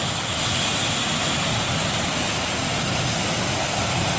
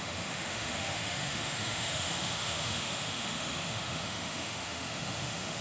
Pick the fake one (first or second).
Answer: second